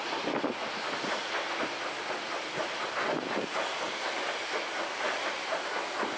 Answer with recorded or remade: recorded